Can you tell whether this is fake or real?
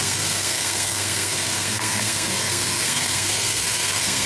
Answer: fake